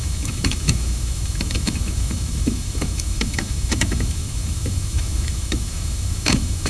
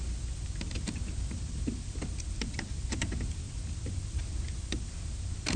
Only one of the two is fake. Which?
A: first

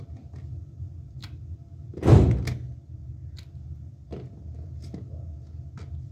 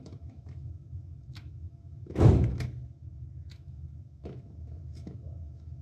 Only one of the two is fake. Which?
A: second